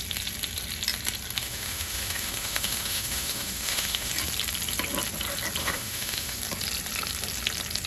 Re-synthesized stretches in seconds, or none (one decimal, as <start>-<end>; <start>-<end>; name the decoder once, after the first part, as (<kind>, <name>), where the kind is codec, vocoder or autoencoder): 1.4-4.1 (autoencoder, DAC-VAE); 5.6-6.4